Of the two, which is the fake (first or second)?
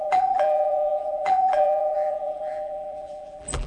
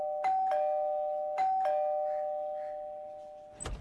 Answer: first